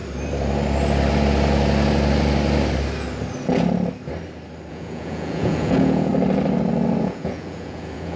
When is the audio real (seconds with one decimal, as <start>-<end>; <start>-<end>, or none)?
0.0-4.7; 6.1-7.0